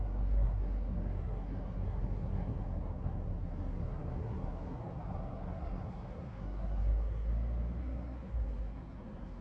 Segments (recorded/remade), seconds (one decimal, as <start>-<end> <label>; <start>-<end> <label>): 0.0-7.3 remade; 7.3-7.8 recorded; 7.8-9.4 remade